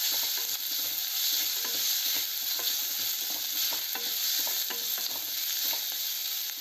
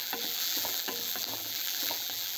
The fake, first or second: second